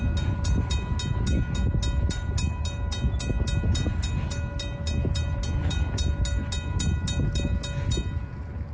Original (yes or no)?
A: yes